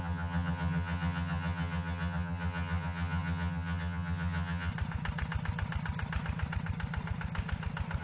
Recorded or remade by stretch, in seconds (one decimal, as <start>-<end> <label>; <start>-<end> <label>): 0.0-4.7 remade; 4.7-8.0 recorded